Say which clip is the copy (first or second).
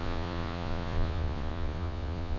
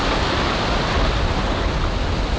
first